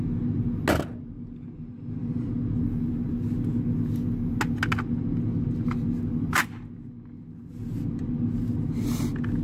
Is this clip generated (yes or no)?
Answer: no